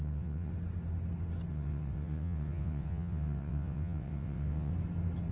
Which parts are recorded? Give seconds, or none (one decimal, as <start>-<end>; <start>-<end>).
0.5-1.5; 4.7-5.3